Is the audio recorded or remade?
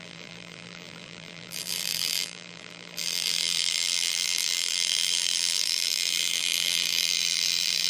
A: remade